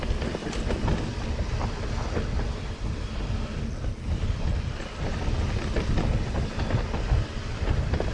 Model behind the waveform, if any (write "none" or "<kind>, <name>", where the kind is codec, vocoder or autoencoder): none